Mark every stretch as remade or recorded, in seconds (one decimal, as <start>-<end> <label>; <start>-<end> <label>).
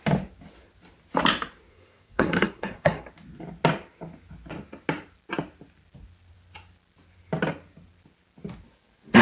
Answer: 0.0-1.7 recorded; 1.7-3.1 remade; 3.1-9.2 recorded